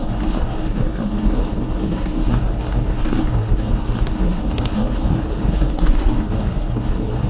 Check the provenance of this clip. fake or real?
fake